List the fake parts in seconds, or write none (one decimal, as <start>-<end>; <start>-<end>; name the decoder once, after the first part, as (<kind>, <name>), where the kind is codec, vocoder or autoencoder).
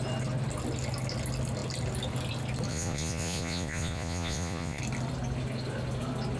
2.7-4.8 (vocoder, Vocos)